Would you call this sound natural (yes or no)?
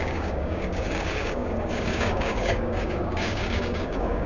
no